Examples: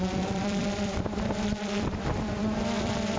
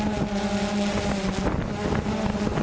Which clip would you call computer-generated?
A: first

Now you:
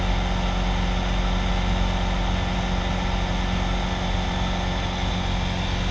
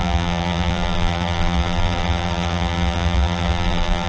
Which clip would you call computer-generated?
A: second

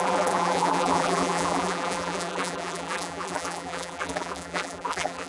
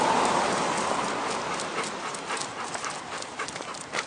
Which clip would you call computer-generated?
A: first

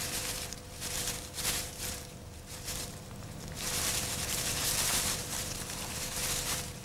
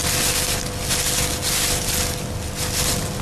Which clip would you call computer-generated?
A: first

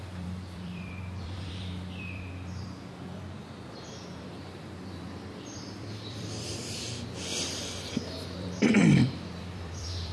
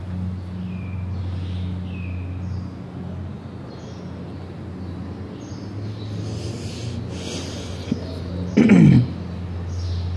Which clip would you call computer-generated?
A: first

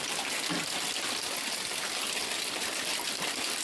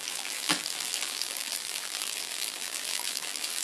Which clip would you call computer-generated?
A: second